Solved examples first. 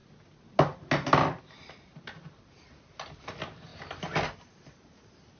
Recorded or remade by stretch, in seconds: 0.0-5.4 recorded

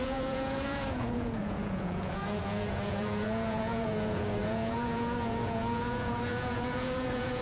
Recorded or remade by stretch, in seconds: 0.0-7.4 remade

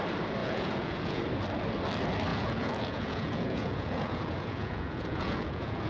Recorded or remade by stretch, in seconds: 0.0-0.4 recorded; 0.4-1.2 remade; 1.2-2.3 recorded; 2.3-5.9 remade

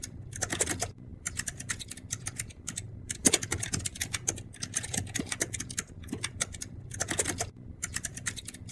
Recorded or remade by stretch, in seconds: 0.0-8.7 remade

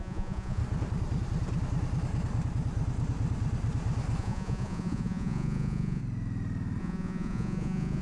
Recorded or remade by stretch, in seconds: 0.0-0.6 remade; 0.6-4.2 recorded; 4.2-6.0 remade; 6.0-6.8 recorded; 6.8-8.0 remade

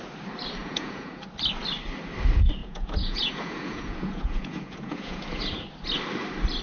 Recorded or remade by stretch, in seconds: 0.0-0.6 recorded; 0.6-1.2 remade; 1.2-2.6 recorded; 2.6-5.4 remade; 5.4-6.6 recorded

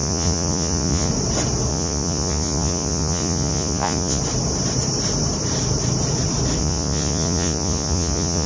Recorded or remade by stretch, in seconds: 0.0-1.1 remade; 1.1-1.7 recorded; 1.7-4.2 remade; 4.2-6.6 recorded; 6.6-8.5 remade